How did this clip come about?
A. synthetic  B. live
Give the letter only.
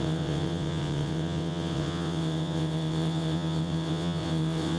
A